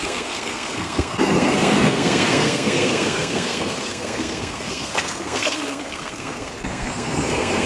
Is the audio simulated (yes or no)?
yes